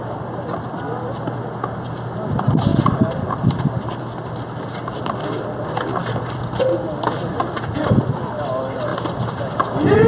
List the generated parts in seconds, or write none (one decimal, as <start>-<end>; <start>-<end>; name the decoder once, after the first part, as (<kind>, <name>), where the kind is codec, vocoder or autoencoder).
none